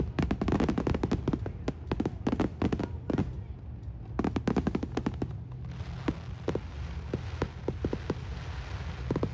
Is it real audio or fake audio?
real